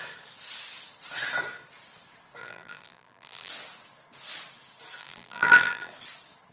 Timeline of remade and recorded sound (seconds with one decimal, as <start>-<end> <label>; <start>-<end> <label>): 0.0-2.4 recorded; 2.4-3.5 remade; 3.5-5.0 recorded; 5.0-5.9 remade; 5.9-6.5 recorded